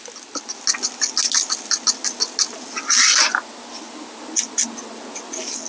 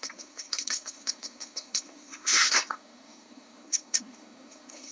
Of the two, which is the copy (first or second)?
second